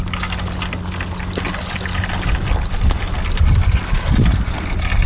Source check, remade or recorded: recorded